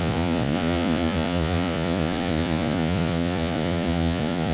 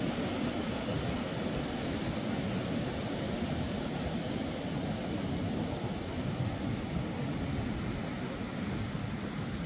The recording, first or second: second